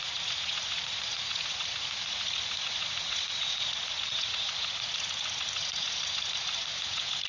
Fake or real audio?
fake